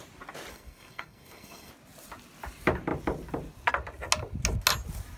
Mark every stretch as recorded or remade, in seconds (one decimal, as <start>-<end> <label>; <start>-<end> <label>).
0.0-0.5 recorded; 0.5-1.7 remade; 1.7-5.2 recorded